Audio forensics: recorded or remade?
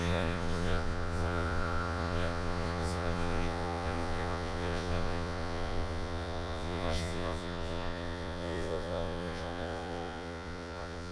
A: remade